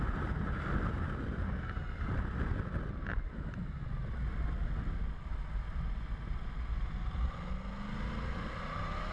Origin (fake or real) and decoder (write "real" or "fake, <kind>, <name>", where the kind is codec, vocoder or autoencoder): real